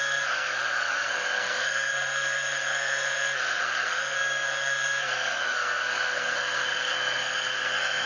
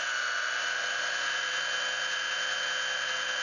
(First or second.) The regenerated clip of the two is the first